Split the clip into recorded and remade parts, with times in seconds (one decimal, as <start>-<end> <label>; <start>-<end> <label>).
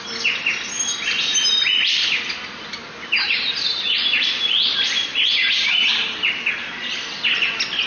0.0-7.9 recorded